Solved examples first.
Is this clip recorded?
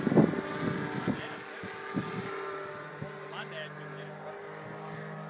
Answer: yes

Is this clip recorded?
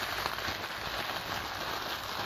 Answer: yes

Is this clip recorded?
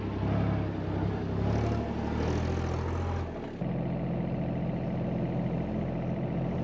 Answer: yes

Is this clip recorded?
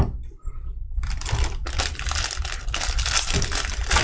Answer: yes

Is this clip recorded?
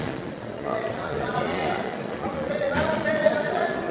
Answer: no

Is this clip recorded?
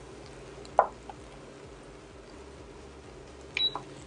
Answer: yes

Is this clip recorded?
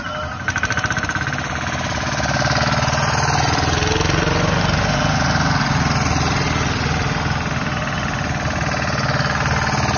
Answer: yes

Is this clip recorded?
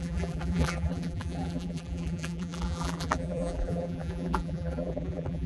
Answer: no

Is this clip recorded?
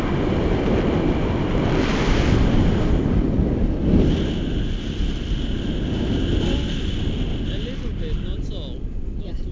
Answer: yes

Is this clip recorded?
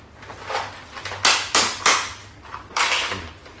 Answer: yes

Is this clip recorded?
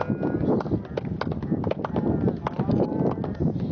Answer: yes